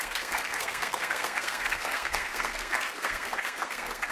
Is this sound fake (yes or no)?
yes